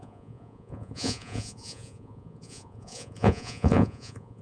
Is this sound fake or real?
fake